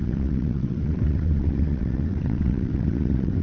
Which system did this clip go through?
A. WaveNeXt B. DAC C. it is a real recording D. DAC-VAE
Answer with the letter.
A